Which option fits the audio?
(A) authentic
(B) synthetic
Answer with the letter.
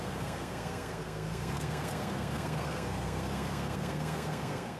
B